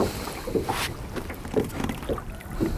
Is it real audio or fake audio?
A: real